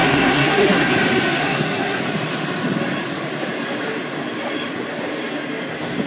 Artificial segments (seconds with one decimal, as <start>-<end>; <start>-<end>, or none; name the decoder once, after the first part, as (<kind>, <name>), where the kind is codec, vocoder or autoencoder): 0.0-0.9 (codec, SNAC); 1.4-2.0

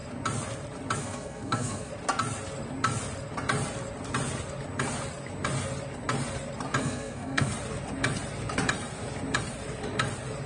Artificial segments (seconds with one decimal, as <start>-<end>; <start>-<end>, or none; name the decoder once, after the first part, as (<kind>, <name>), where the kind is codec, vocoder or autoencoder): 1.0-1.9 (codec, SNAC); 6.8-7.5

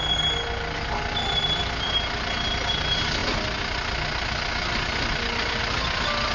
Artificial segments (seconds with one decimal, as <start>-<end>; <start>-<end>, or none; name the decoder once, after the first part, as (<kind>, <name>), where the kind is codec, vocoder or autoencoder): none

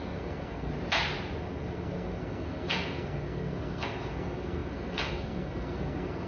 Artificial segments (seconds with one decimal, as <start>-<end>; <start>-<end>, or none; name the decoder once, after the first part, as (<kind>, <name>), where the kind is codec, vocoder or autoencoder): 0.0-0.7 (codec, SNAC); 1.4-6.3

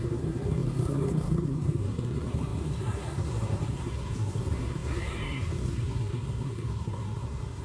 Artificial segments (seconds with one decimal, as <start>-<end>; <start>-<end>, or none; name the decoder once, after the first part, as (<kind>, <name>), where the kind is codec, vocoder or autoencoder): 0.0-7.6 (codec, SNAC)